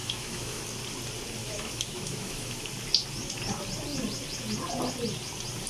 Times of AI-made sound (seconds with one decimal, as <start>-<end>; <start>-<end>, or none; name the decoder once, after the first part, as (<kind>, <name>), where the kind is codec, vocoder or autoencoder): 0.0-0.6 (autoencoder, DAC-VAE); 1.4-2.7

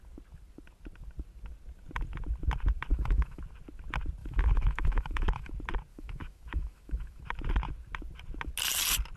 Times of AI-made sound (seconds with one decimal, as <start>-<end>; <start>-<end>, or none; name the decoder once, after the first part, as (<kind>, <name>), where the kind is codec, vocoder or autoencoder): 2.9-3.4 (autoencoder, DAC-VAE); 4.2-5.5; 5.9-7.2

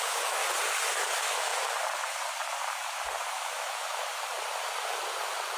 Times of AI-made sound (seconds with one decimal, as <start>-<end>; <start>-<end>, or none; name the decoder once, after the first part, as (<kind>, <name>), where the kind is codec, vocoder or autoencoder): 0.0-0.4 (autoencoder, DAC-VAE); 0.9-1.5; 3.3-4.1

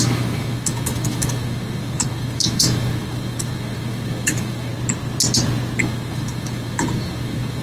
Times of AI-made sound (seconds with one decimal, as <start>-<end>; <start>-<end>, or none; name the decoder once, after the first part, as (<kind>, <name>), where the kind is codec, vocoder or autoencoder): 0.0-4.7 (autoencoder, DAC-VAE); 5.8-7.6

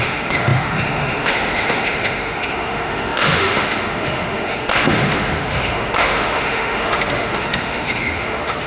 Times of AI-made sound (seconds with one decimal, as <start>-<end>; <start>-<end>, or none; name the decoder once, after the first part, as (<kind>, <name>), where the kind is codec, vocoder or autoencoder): 0.0-8.7 (autoencoder, DAC-VAE)

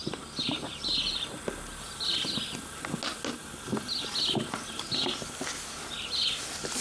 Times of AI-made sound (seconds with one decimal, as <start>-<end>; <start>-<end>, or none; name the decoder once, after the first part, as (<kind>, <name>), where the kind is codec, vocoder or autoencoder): none

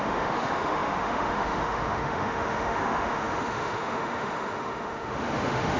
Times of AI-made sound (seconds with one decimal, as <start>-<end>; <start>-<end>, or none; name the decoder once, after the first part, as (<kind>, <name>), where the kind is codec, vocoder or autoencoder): 0.0-5.8 (autoencoder, DAC-VAE)